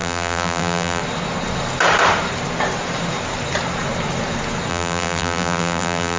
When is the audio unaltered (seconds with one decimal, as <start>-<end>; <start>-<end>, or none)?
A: 1.0-4.7